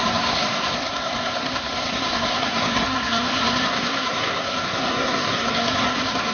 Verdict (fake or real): fake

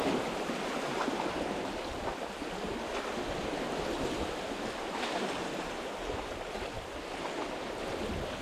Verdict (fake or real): real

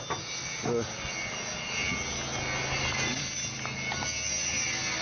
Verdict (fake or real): real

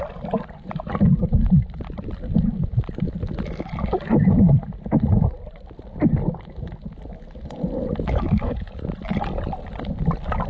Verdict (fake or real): real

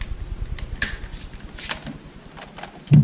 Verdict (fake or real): real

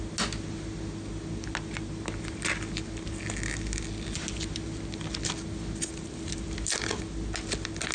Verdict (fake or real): real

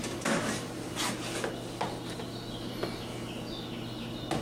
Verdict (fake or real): real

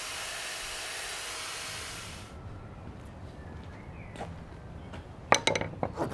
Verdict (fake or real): real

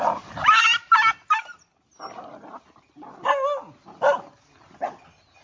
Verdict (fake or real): real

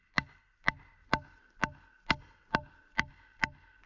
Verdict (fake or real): real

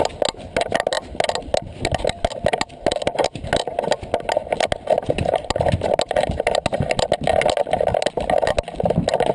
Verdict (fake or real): real